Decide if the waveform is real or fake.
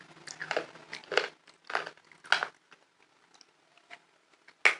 real